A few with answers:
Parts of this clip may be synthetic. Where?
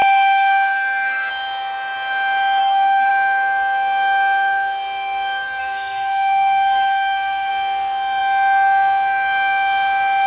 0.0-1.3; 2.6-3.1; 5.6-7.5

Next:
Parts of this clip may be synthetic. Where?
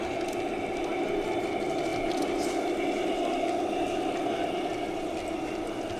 none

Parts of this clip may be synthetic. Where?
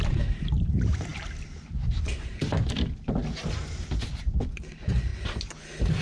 0.0-3.2; 4.2-5.1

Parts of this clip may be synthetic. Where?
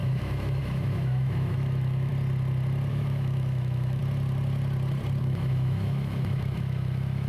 0.0-2.1; 2.9-4.0; 5.2-7.3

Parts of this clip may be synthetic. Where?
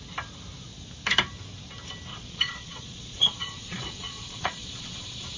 2.1-5.4